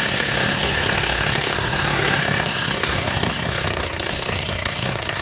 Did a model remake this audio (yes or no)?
yes